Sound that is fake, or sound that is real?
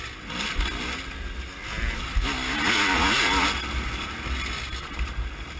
real